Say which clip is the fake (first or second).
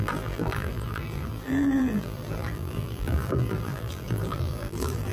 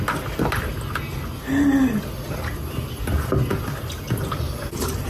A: first